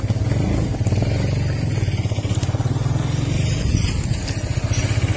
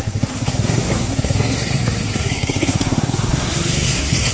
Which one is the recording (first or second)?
first